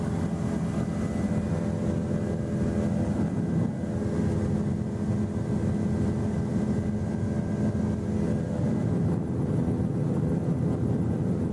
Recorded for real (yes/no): yes